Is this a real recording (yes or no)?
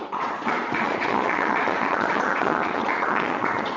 no